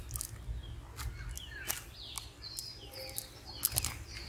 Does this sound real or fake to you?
real